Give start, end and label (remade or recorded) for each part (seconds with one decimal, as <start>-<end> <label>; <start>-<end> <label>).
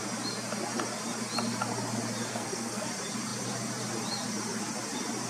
0.0-2.3 recorded; 2.3-2.9 remade; 2.9-5.3 recorded